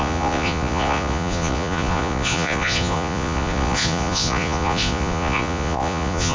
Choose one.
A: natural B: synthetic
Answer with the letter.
B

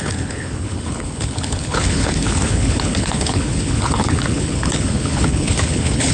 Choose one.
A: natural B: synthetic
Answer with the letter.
B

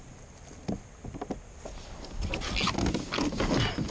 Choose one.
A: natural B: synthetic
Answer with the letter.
A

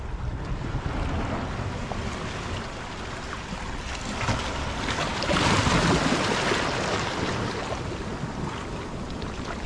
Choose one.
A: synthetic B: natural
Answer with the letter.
B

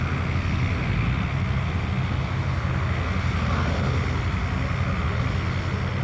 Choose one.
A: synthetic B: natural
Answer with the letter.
B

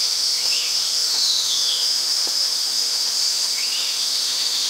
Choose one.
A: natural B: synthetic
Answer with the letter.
B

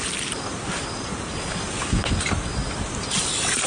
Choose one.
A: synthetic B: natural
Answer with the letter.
B